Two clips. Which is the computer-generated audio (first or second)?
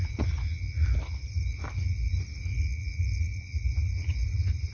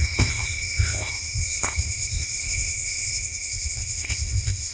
second